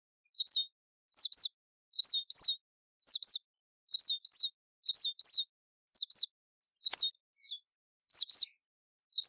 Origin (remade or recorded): recorded